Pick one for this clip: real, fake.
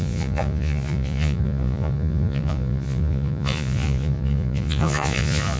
fake